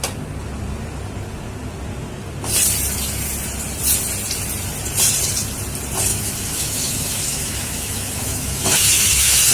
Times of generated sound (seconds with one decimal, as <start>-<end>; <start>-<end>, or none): 6.1-9.5